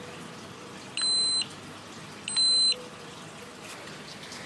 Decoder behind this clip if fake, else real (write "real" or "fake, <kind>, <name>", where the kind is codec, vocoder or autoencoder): real